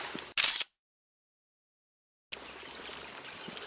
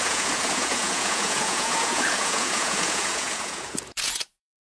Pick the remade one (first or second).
second